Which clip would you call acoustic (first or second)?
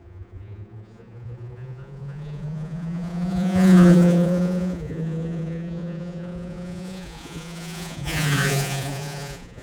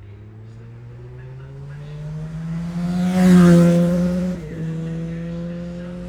second